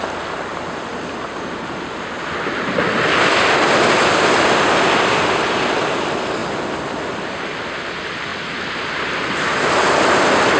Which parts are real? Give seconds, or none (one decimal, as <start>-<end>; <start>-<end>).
0.0-10.6